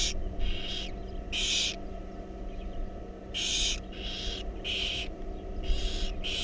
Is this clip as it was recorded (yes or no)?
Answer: yes